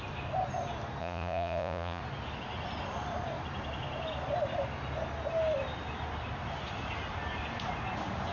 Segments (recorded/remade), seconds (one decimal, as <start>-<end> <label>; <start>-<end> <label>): 0.0-1.0 recorded; 1.0-2.0 remade; 2.0-8.3 recorded